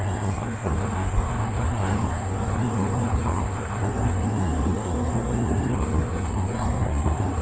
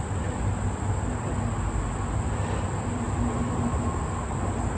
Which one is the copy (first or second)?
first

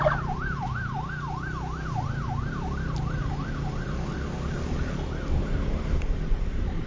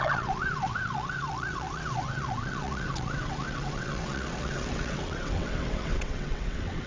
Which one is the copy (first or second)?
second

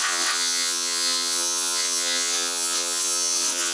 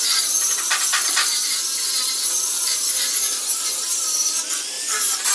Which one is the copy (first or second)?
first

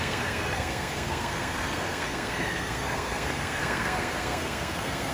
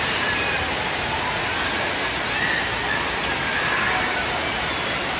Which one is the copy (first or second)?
first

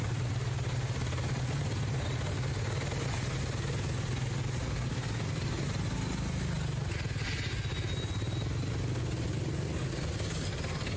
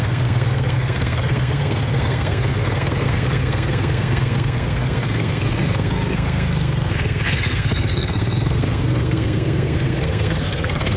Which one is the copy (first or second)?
second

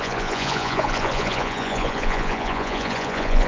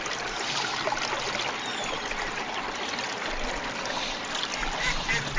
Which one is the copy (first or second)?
first